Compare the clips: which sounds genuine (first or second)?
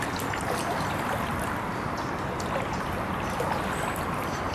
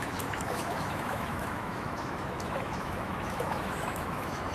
first